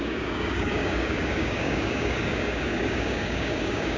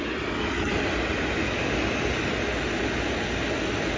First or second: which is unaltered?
second